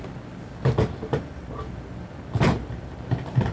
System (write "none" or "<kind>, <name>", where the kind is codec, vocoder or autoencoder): none